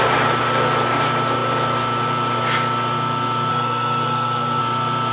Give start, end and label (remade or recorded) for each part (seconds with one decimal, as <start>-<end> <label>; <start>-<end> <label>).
0.0-3.5 recorded; 3.5-4.6 remade; 4.6-5.1 recorded